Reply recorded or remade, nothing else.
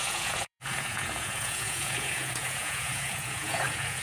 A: remade